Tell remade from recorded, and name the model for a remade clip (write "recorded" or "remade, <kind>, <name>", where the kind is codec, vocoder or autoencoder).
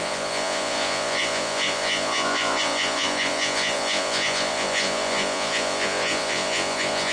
remade, vocoder, Vocos